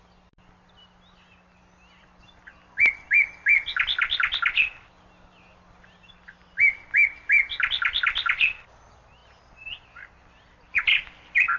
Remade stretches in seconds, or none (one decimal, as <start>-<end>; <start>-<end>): none